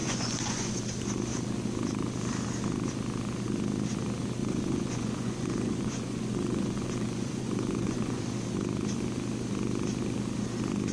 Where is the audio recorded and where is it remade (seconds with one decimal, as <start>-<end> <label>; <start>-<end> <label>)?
0.0-0.8 remade; 0.8-4.4 recorded; 4.4-8.2 remade; 8.2-10.9 recorded